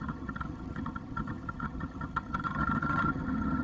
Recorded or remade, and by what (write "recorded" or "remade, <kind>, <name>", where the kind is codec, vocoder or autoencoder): remade, vocoder, HiFi-GAN